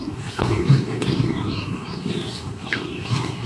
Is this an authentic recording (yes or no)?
no